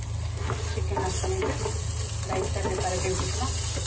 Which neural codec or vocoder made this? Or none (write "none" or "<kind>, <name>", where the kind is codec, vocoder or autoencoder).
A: none